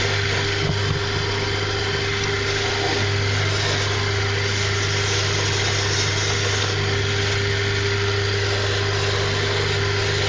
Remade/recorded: recorded